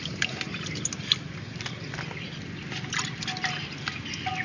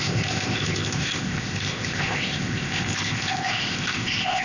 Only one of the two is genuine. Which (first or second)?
first